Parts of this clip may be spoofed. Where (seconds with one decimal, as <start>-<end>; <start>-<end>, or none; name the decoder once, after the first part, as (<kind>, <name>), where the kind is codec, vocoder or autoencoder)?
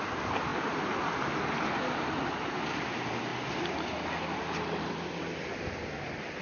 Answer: none